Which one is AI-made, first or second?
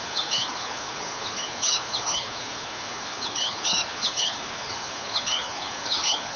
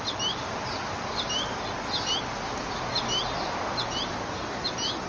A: first